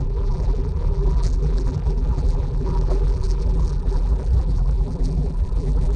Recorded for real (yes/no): no